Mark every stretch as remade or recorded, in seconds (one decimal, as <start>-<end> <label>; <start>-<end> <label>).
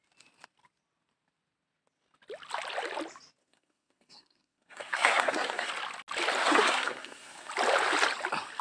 0.0-3.4 recorded; 3.4-5.7 remade; 5.7-6.4 recorded; 6.4-7.5 remade; 7.5-8.6 recorded